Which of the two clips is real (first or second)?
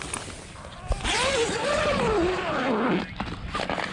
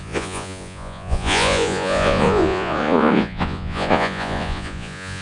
first